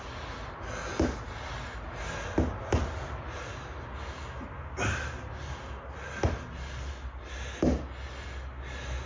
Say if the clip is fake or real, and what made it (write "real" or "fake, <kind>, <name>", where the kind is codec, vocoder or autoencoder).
real